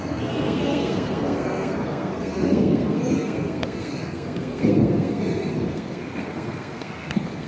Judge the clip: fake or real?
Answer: fake